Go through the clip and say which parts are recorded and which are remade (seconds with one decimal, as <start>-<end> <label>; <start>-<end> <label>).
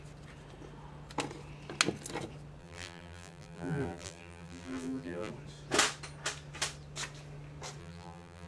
0.0-2.6 recorded; 2.6-5.3 remade; 5.3-7.8 recorded; 7.8-8.5 remade